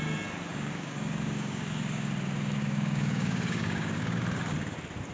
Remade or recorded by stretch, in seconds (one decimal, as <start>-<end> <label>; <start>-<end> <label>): 0.0-0.5 recorded; 0.5-2.1 remade; 2.1-2.6 recorded; 2.6-4.2 remade; 4.2-5.1 recorded